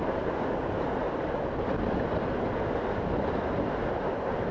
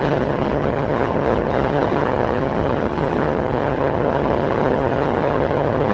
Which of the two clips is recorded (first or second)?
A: first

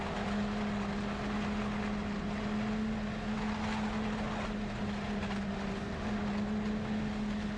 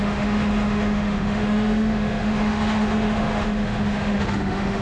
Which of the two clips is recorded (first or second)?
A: first